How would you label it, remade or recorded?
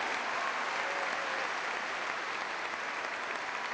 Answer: recorded